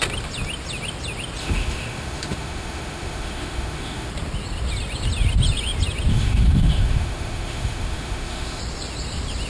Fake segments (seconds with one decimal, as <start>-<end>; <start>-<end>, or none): 1.4-4.1; 6.1-8.6